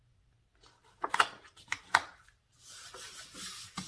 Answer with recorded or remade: remade